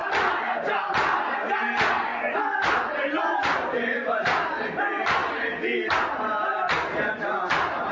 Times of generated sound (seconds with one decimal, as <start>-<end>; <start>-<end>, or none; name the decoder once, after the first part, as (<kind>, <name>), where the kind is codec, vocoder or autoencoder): none